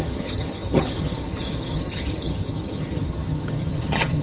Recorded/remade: remade